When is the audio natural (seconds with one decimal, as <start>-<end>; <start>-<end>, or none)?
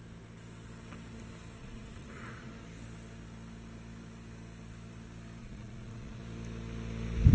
0.0-1.6; 2.5-5.4; 6.2-7.3